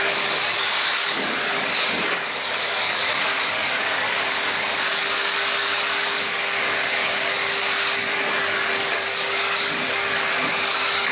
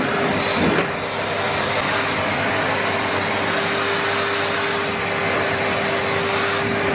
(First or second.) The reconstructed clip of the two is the first